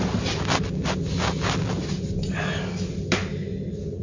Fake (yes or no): no